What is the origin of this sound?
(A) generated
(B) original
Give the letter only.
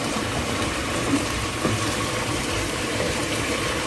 A